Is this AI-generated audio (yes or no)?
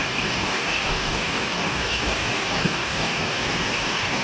yes